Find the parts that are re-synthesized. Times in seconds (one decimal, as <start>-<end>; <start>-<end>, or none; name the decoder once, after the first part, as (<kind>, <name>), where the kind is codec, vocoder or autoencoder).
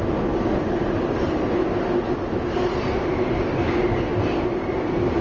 none